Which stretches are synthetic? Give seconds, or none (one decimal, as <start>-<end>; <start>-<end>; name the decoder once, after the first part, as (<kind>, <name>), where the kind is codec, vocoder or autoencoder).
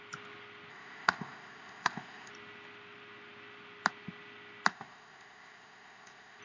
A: 0.7-2.3 (codec, ZipCodec); 4.7-6.4